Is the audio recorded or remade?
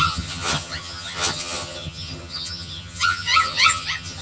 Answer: remade